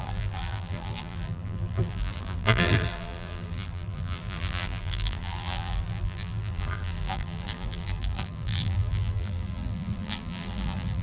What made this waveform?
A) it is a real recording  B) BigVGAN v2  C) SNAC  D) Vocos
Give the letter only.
B